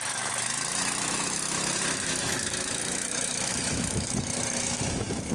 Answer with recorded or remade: remade